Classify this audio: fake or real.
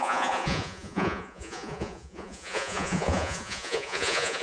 fake